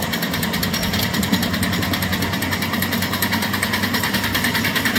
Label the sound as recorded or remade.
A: recorded